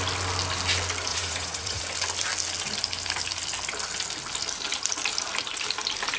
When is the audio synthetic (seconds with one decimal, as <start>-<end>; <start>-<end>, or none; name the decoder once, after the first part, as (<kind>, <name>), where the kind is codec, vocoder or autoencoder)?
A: 1.1-1.8 (vocoder, Vocos)